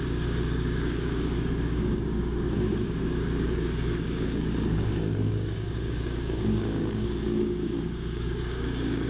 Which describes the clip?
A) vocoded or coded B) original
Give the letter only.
A